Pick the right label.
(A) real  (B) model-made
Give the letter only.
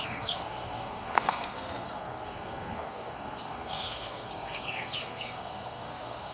B